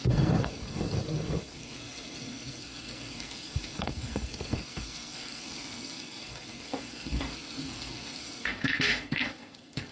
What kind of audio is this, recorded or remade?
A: remade